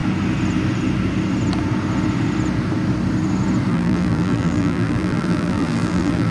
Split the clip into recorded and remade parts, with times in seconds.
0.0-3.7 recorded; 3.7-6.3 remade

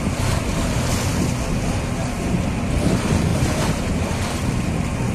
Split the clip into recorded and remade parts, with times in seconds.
0.0-3.3 recorded; 3.3-3.8 remade; 3.8-5.1 recorded

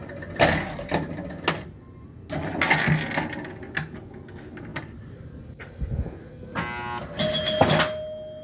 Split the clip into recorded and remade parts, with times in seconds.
0.0-4.7 recorded; 4.7-5.4 remade; 5.4-8.4 recorded

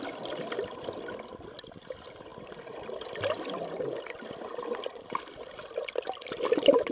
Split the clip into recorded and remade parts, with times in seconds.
0.0-6.9 recorded